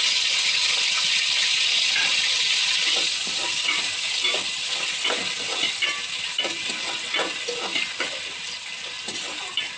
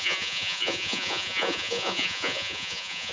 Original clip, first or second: first